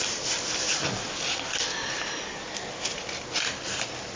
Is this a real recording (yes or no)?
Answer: yes